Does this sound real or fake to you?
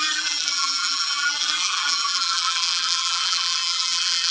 fake